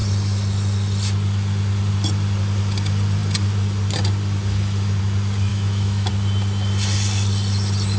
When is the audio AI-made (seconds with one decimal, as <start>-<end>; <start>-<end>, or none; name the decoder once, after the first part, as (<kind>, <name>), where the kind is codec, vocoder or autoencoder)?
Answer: 5.5-6.1 (autoencoder, DAC-VAE)